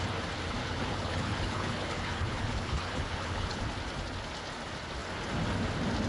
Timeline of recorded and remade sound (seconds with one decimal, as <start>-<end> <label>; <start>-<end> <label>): 0.0-0.6 recorded; 0.6-3.6 remade; 3.6-6.1 recorded